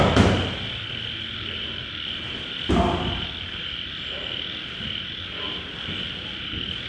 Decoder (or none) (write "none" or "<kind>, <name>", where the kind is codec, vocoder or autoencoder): none